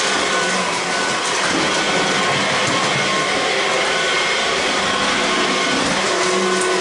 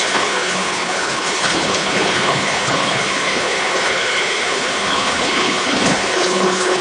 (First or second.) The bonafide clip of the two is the first